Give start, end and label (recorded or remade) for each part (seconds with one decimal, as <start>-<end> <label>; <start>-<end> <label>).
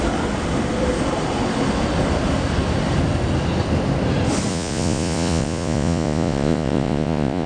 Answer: 0.0-4.5 recorded; 4.5-7.5 remade